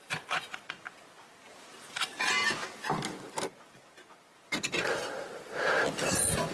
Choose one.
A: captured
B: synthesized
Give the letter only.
A